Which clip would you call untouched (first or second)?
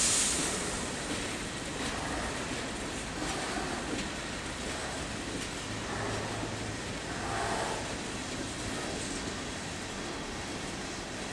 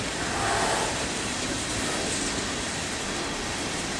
first